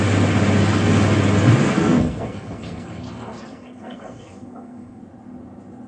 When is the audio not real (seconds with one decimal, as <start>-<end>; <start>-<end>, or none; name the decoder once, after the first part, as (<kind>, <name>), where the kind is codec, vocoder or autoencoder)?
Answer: 1.6-5.0 (codec, SNAC)